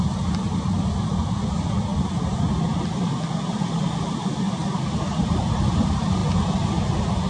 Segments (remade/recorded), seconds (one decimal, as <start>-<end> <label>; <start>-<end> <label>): 0.0-7.3 recorded